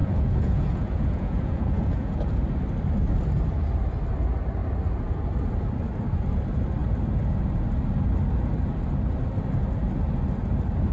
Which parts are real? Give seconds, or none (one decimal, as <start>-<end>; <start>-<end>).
2.3-10.9